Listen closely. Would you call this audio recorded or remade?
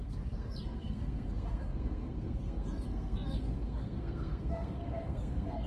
remade